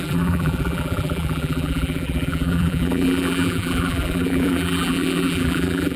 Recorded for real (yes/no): no